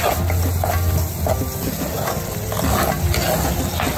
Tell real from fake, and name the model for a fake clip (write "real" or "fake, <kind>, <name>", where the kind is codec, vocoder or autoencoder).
real